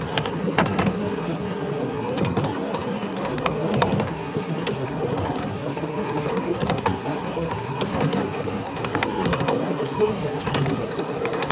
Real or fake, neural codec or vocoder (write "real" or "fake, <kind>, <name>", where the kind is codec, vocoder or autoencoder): fake, codec, SNAC